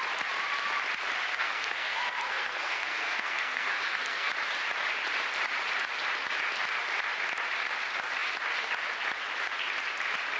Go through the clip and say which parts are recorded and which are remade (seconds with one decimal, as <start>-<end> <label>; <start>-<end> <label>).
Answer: 0.0-1.3 recorded; 1.3-4.3 remade; 4.3-10.4 recorded